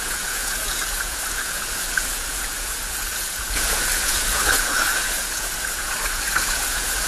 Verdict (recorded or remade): remade